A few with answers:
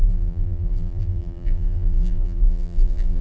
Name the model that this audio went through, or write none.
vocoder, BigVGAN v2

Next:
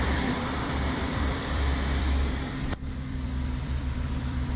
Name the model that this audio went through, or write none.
vocoder, BigVGAN v2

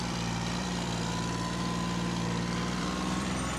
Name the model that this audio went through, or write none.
vocoder, BigVGAN v2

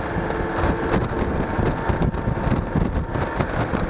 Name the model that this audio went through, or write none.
none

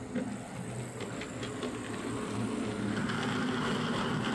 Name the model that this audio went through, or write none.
none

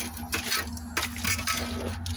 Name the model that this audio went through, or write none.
none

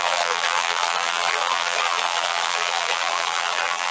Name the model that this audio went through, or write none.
vocoder, BigVGAN v2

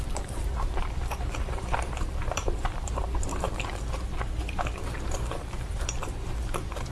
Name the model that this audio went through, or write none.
vocoder, BigVGAN v2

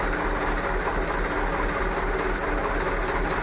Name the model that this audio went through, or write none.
none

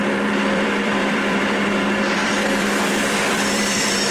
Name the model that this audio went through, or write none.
vocoder, BigVGAN v2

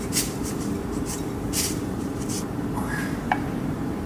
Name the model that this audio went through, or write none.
vocoder, BigVGAN v2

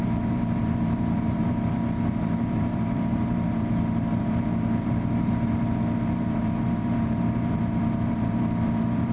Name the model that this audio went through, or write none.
vocoder, BigVGAN v2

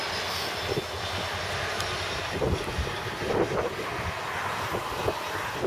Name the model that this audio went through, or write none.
none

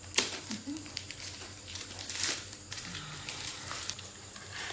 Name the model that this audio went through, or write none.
vocoder, BigVGAN v2